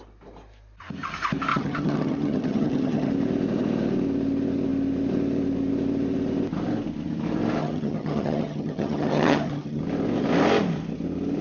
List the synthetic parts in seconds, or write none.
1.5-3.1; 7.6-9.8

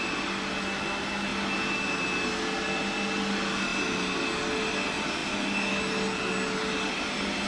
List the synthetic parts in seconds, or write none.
none

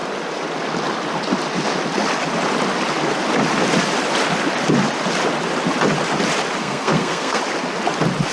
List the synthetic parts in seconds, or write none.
6.6-7.4

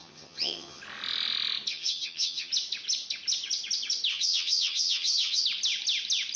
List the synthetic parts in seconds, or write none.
0.0-0.8; 1.7-2.5; 4.1-5.4

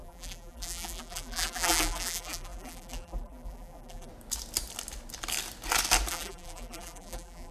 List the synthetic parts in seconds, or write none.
0.0-4.1; 6.1-7.5

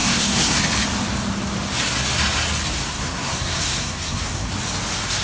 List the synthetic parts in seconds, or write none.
0.0-0.6; 2.7-4.5